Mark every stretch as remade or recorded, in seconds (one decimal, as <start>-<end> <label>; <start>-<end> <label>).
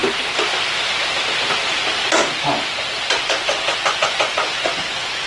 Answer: 0.0-3.2 recorded; 3.2-5.3 remade